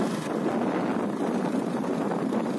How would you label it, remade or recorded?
recorded